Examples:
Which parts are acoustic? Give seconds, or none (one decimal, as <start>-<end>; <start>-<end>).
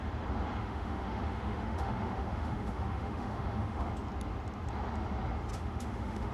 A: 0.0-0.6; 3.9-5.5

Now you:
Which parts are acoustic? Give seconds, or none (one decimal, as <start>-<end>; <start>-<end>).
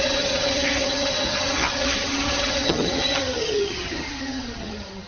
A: none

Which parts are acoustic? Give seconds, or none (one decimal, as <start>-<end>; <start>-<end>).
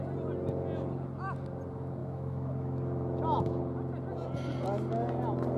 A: 0.0-2.0; 3.6-5.6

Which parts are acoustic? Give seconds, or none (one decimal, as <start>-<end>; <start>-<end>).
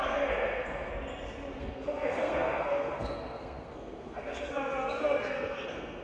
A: 0.9-1.6